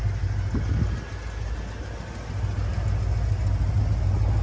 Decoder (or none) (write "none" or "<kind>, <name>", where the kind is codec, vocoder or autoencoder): none